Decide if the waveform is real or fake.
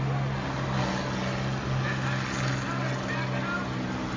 real